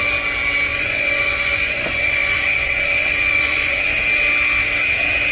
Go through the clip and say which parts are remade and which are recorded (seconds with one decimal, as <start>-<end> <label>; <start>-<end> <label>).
0.0-0.7 recorded; 0.7-3.9 remade; 3.9-5.3 recorded